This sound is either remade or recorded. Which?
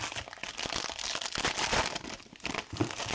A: recorded